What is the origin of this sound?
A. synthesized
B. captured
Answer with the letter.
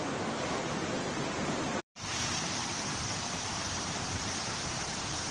A